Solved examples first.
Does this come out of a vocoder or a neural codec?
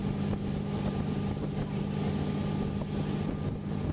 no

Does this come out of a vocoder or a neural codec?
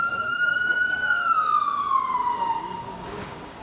yes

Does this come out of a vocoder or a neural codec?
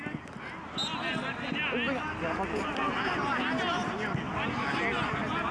no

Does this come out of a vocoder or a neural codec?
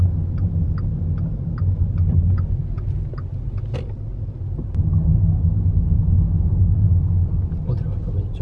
no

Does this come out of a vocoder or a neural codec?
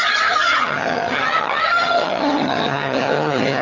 yes